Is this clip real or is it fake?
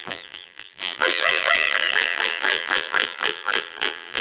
fake